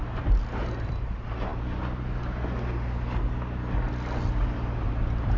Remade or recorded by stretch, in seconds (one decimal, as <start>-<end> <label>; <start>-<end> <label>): 0.0-5.4 recorded